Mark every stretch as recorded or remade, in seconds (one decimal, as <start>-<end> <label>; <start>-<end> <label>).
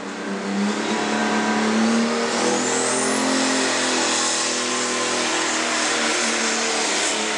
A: 0.0-5.3 recorded; 5.3-6.4 remade; 6.4-7.4 recorded